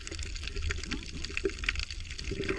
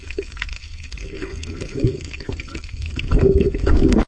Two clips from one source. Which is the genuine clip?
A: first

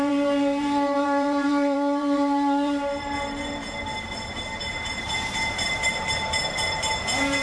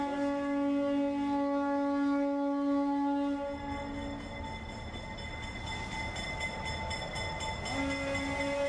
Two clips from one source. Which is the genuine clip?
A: second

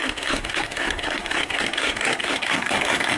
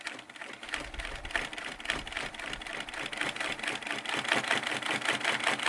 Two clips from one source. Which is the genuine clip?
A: second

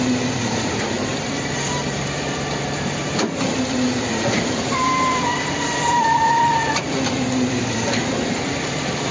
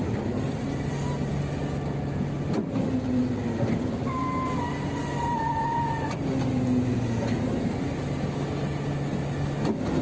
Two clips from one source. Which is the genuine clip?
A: second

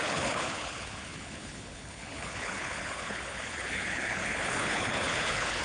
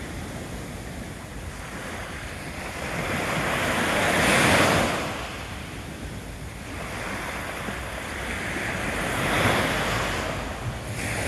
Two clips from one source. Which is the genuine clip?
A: second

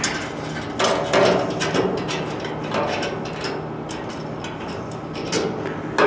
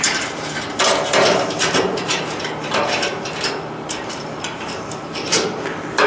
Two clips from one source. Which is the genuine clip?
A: first